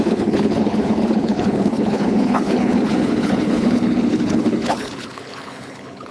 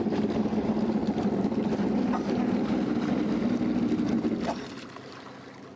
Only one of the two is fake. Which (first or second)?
first